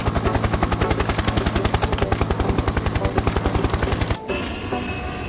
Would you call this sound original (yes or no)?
yes